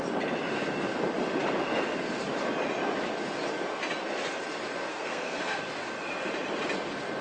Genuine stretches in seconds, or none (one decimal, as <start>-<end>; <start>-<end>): 0.0-4.9; 5.6-7.2